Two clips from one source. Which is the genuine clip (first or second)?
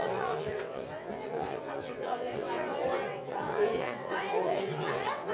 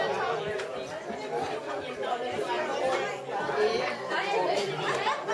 second